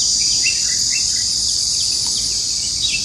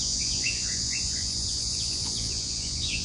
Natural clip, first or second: first